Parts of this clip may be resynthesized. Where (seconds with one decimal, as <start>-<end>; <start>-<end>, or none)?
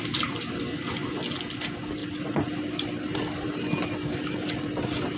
none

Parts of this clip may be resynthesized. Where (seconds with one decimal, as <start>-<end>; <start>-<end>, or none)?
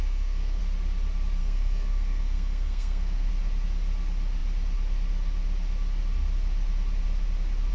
0.0-0.6; 1.4-3.3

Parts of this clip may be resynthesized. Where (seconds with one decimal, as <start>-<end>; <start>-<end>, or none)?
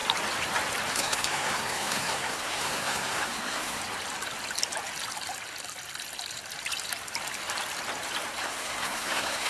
0.9-3.8; 8.4-9.5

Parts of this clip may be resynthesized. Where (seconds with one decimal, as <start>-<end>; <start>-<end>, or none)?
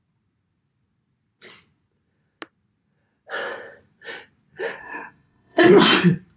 4.8-5.6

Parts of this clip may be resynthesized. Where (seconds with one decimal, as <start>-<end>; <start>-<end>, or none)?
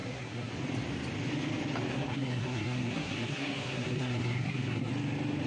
0.0-0.5; 1.9-4.9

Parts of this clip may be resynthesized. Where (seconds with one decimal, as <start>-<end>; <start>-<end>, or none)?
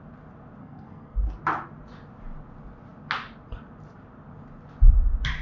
0.6-1.3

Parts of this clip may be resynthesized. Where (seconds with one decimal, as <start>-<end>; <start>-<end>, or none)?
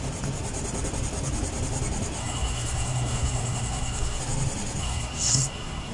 2.2-4.2; 4.8-5.9